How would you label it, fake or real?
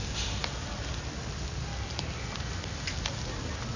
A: real